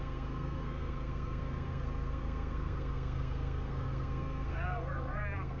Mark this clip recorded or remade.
remade